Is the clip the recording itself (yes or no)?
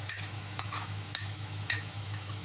no